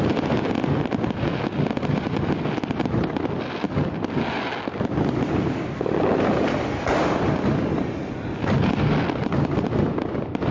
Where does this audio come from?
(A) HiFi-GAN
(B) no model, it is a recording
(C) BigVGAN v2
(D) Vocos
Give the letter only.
B